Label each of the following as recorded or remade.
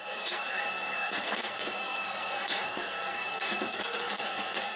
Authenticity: remade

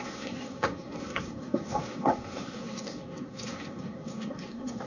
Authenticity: remade